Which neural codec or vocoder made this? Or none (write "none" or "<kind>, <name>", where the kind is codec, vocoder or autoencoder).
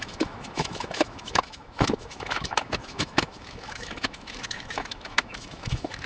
autoencoder, DAC-VAE